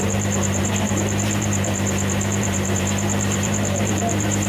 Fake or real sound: fake